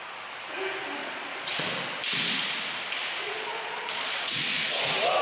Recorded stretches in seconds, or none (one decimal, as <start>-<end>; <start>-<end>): 0.0-1.0; 1.7-3.2; 4.8-5.2

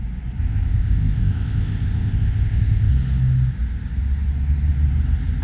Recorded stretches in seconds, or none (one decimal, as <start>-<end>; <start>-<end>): 0.0-0.4; 2.9-5.4